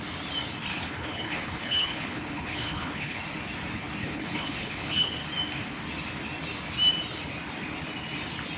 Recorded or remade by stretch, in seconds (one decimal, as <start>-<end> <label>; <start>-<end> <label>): 0.0-0.7 recorded; 0.7-3.2 remade; 3.2-4.0 recorded; 4.0-5.1 remade; 5.1-8.6 recorded